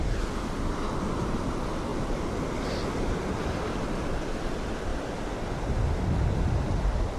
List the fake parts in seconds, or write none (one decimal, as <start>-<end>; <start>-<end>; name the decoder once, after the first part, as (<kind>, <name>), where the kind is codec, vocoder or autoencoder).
none